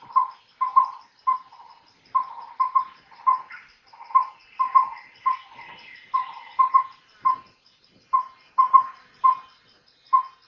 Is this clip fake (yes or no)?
no